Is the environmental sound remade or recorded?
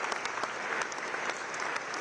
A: recorded